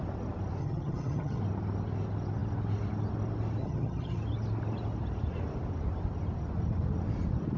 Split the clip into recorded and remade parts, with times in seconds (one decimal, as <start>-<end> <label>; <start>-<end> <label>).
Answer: 0.0-0.6 recorded; 0.6-1.4 remade; 1.4-3.6 recorded; 3.6-4.2 remade; 4.2-7.6 recorded